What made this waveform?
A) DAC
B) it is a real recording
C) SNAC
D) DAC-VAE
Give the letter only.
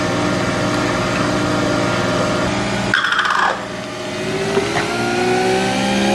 B